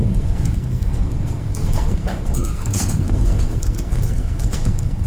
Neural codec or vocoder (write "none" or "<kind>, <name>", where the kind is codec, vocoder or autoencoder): codec, SNAC